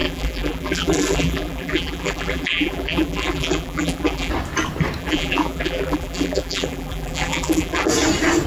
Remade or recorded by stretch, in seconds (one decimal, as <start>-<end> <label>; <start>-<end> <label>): 0.0-4.3 remade; 4.3-5.0 recorded; 5.0-7.9 remade; 7.9-8.5 recorded